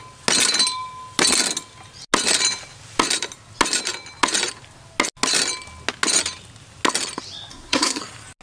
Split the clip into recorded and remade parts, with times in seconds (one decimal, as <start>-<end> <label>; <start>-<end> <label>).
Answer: 0.0-7.5 recorded; 7.5-8.0 remade; 8.0-8.4 recorded